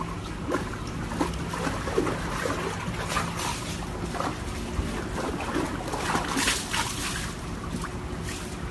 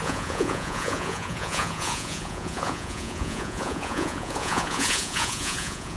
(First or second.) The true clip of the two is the first